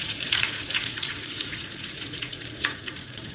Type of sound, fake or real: fake